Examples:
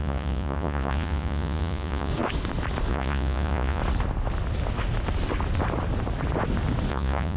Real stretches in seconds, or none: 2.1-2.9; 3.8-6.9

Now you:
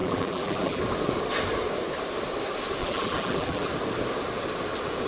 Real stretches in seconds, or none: 0.8-2.8; 3.7-5.1

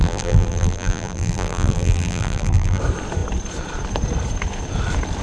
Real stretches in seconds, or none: 2.8-5.2

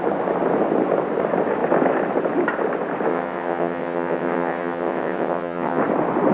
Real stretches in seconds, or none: 0.0-3.1; 5.8-6.3

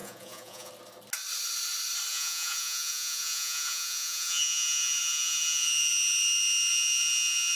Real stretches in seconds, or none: 0.7-2.1; 5.9-6.7

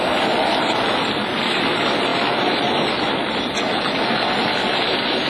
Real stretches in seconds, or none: 0.0-5.3

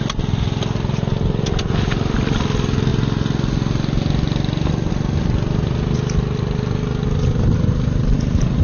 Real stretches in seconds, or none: 0.0-8.6